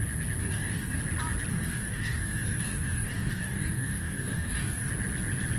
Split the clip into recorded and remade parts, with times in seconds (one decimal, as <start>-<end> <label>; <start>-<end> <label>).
0.0-0.4 recorded; 0.4-1.0 remade; 1.0-1.5 recorded; 1.5-4.9 remade; 4.9-5.6 recorded